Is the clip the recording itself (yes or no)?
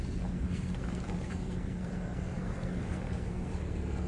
no